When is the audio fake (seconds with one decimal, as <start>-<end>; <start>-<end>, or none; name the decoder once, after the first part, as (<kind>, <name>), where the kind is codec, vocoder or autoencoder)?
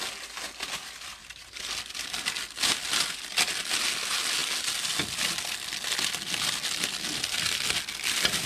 1.2-1.7 (vocoder, BigVGAN v2)